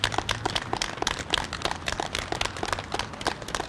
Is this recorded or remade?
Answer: recorded